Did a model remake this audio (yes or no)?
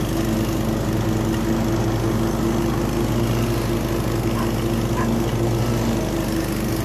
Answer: no